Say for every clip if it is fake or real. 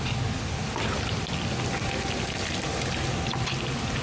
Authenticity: real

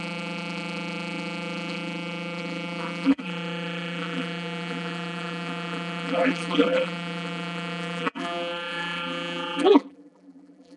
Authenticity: fake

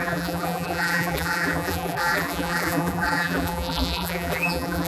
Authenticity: fake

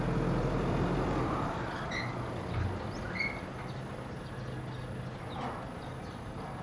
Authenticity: real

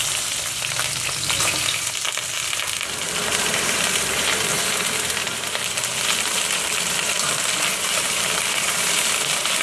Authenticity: fake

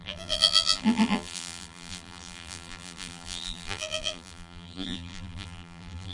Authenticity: fake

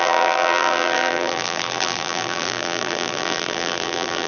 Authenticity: fake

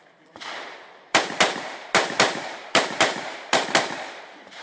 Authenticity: fake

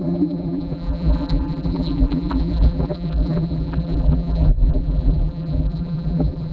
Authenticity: fake